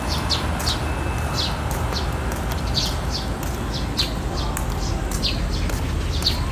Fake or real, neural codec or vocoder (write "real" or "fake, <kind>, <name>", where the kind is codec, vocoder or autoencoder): real